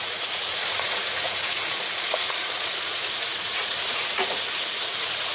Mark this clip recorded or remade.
remade